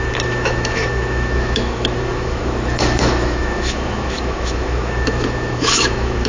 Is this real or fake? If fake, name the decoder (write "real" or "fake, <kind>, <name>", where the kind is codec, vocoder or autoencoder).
fake, autoencoder, DAC-VAE